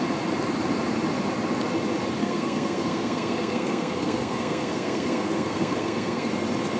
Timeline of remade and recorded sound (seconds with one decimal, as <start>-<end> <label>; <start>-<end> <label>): 0.0-2.2 recorded; 2.2-6.3 remade; 6.3-6.8 recorded